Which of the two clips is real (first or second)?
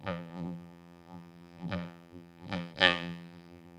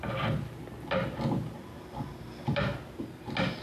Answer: second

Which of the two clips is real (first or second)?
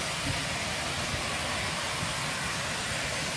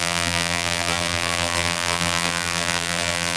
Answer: first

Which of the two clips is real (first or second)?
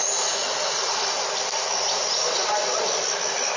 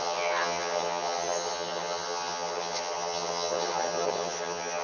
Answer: first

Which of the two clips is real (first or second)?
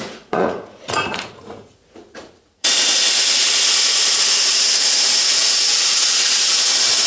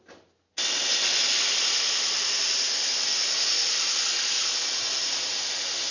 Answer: second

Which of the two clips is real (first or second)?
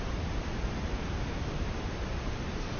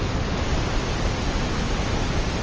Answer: second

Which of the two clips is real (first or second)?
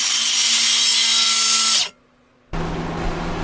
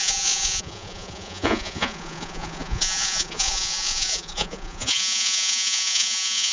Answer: first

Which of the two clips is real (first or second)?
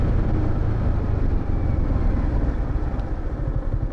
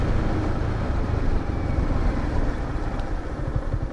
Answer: first